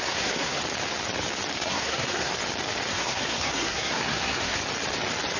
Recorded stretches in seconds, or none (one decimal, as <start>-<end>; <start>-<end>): 0.6-1.5; 2.3-2.9; 4.6-5.4